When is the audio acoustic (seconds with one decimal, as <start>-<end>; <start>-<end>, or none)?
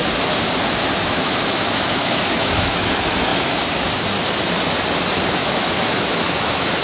0.0-1.0; 2.8-5.4